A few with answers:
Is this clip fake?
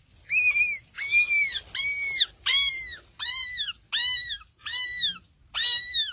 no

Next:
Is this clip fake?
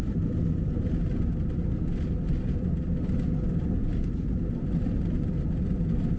no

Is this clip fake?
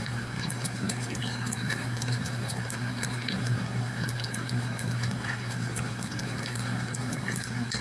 yes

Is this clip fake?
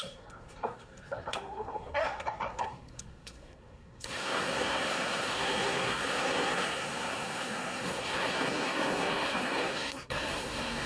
yes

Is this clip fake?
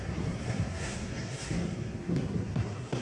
yes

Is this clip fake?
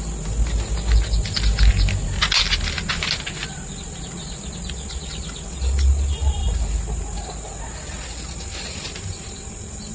no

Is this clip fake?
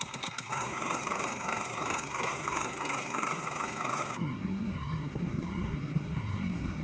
yes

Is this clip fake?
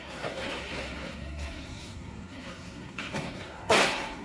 yes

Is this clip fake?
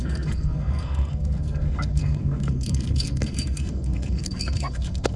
yes